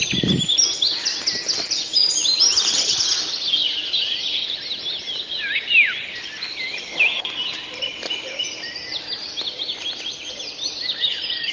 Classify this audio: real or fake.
real